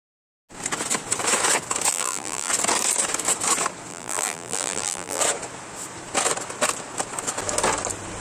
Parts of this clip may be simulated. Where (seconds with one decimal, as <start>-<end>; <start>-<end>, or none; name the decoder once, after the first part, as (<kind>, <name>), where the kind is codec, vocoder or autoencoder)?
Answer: 1.9-2.5 (vocoder, BigVGAN v2); 3.9-5.2